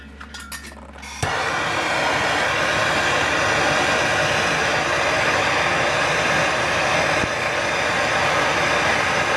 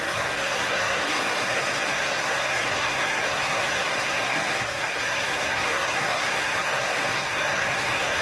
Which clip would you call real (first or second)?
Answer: first